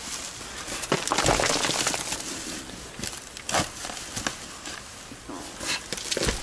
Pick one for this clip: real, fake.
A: real